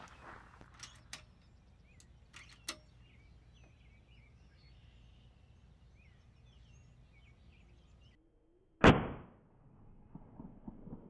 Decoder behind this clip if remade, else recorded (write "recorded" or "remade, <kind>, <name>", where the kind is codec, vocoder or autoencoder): recorded